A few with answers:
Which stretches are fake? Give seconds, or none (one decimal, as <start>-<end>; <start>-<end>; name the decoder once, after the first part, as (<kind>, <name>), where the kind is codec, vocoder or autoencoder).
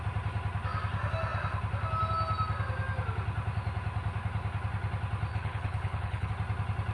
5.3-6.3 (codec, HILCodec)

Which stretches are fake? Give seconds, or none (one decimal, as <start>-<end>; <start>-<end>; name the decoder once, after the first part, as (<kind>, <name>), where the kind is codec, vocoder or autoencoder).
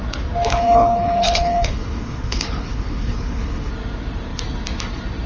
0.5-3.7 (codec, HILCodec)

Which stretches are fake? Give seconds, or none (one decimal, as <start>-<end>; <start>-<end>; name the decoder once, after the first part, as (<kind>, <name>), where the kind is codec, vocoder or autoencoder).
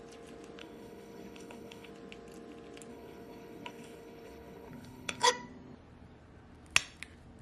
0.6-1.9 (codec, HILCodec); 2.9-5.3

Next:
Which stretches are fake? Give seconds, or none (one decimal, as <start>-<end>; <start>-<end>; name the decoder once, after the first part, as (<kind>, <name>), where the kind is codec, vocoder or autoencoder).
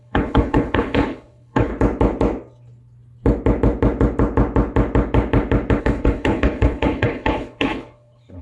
0.0-1.7 (codec, HILCodec); 5.8-8.4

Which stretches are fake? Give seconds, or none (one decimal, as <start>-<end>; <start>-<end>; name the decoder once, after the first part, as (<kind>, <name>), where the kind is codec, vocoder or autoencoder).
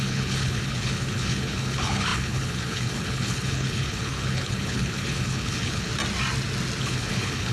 0.0-5.9 (codec, HILCodec); 6.8-7.5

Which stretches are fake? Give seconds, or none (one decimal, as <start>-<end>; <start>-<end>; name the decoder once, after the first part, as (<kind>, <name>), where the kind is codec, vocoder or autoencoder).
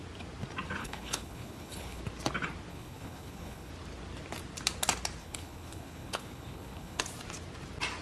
0.8-2.0 (codec, HILCodec); 2.7-3.7; 5.2-7.0